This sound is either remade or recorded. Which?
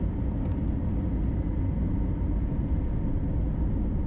recorded